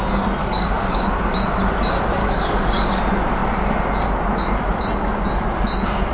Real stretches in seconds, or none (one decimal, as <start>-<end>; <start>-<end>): 0.0-0.4; 1.1-2.2; 3.0-6.1